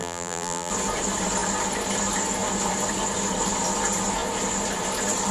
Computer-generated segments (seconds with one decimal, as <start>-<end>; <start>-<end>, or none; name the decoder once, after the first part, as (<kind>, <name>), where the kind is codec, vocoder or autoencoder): 0.0-0.7 (vocoder, BigVGAN v2)